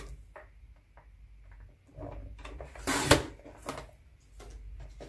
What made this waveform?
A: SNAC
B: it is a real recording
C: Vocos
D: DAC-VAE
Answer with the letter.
B